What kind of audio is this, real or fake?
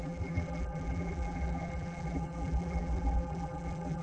fake